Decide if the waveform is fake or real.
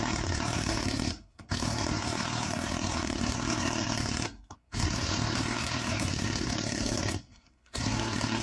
fake